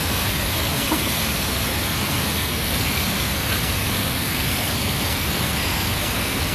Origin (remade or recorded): remade